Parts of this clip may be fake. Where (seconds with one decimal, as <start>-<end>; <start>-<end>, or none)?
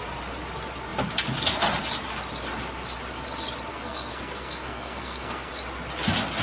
3.7-5.5